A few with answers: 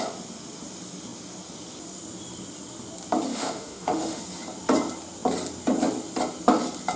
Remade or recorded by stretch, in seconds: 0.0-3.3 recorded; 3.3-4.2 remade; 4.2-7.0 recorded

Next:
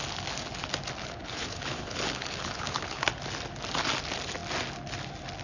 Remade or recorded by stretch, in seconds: 0.0-1.0 recorded; 1.0-3.1 remade; 3.1-5.4 recorded

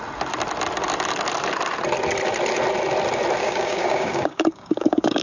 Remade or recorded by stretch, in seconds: 0.0-3.4 recorded; 3.4-5.2 remade